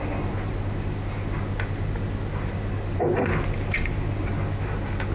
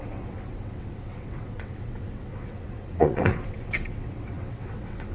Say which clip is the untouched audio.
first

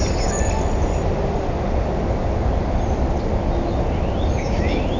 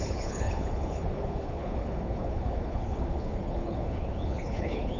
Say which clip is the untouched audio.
first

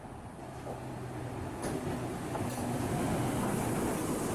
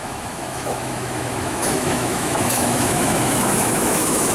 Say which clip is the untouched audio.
first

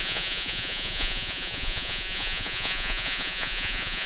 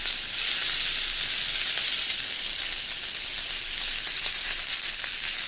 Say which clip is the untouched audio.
second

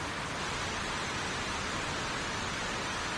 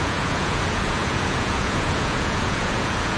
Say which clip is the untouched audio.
first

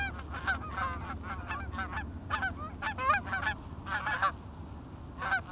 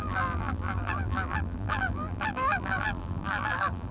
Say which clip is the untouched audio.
first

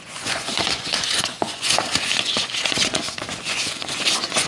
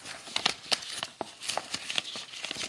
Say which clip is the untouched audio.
second